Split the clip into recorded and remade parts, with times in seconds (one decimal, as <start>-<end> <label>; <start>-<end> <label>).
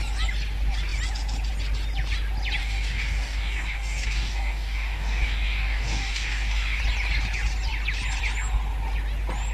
0.0-2.6 recorded; 2.6-6.8 remade; 6.8-9.5 recorded